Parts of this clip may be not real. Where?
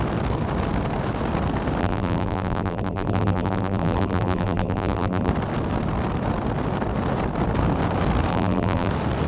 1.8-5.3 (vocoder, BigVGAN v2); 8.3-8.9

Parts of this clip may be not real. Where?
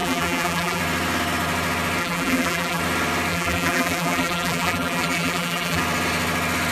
0.0-0.8 (vocoder, BigVGAN v2); 2.0-2.8; 3.3-5.8